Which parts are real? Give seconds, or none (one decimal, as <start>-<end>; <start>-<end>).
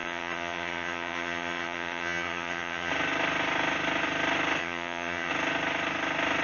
2.9-4.6; 5.3-6.4